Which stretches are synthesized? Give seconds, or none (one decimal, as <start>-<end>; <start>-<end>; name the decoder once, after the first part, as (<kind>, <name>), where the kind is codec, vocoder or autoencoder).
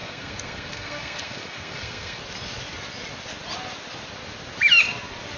0.0-2.2 (codec, SNAC)